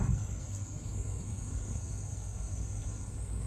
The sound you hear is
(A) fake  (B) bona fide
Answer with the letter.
A